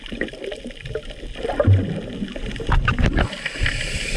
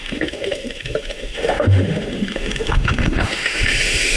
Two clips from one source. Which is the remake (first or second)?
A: second